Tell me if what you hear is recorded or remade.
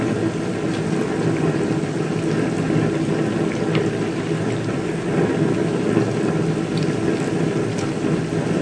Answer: recorded